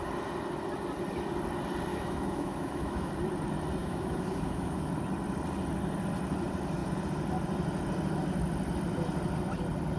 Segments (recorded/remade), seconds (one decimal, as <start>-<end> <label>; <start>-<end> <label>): 0.0-1.9 recorded; 1.9-3.1 remade; 3.1-3.8 recorded; 3.8-4.9 remade; 4.9-10.0 recorded